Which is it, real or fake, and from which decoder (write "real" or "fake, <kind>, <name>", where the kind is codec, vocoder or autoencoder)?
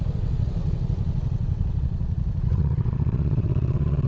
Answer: fake, vocoder, WaveNeXt